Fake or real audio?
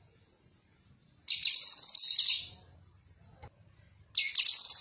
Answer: real